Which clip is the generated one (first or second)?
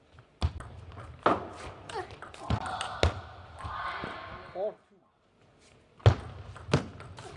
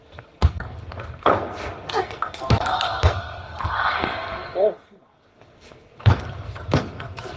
second